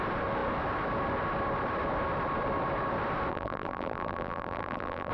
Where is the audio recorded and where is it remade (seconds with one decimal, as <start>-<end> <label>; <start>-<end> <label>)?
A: 0.0-3.3 recorded; 3.3-5.1 remade